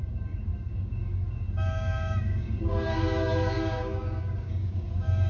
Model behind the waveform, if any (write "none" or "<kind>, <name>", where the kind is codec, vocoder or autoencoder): codec, DAC